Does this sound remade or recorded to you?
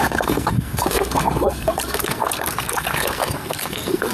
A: remade